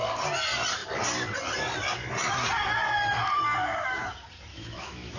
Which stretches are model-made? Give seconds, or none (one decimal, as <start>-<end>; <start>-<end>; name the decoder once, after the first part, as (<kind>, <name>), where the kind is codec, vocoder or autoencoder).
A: 4.5-5.2 (autoencoder, DAC-VAE)